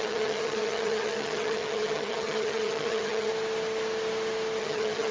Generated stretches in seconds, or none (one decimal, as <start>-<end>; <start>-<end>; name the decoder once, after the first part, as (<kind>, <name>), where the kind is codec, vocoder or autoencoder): 0.0-3.3 (vocoder, HiFi-GAN); 4.6-5.1